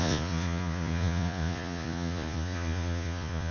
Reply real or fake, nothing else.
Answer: fake